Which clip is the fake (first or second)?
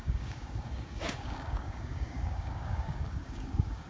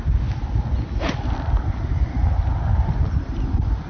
first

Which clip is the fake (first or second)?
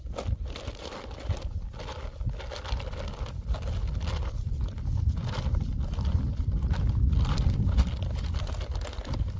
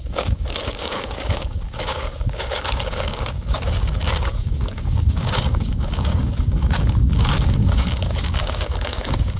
second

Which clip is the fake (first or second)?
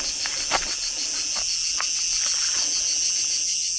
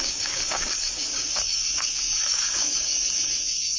second